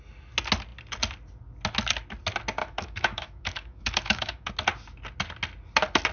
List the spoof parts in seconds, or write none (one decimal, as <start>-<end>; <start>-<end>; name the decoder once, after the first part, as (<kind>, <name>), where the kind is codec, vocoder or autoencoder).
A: 2.6-4.5 (autoencoder, DAC-VAE)